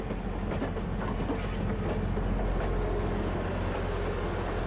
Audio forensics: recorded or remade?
recorded